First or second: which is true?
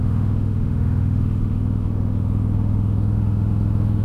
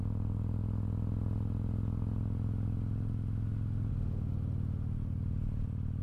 second